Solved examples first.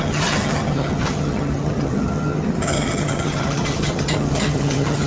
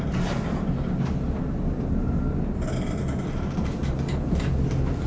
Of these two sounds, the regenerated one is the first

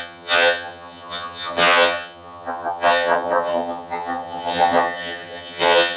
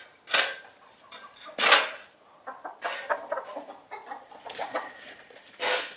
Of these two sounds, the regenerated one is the first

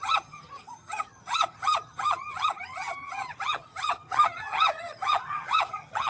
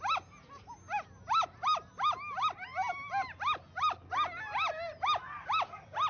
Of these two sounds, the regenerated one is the first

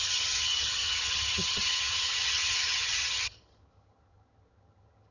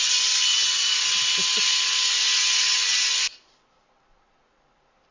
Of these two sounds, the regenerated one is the first